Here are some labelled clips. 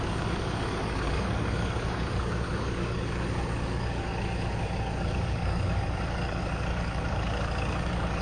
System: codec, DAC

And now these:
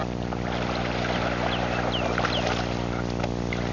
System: none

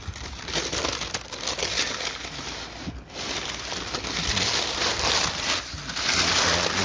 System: none